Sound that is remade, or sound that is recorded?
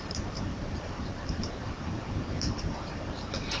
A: remade